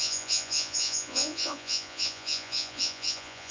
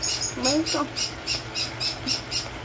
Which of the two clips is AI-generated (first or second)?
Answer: first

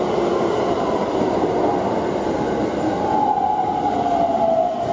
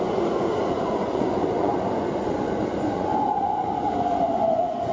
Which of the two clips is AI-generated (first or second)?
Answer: second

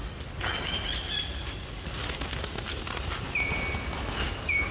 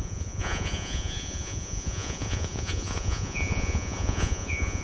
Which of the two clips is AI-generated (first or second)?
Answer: second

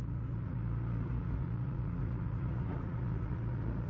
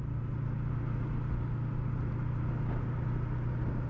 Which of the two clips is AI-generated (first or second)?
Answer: first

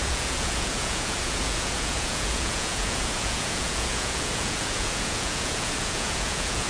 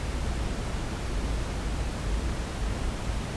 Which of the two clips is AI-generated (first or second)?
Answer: first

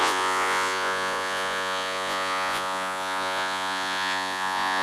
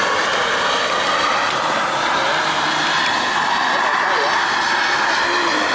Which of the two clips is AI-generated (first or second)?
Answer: first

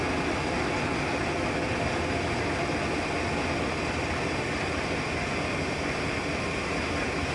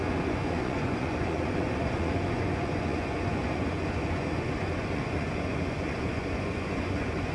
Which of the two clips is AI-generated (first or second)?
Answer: second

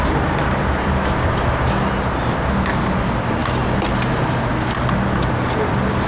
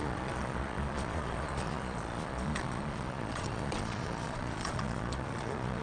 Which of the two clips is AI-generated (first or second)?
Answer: second